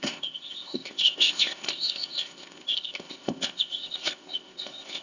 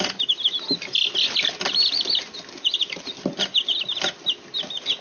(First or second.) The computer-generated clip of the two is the first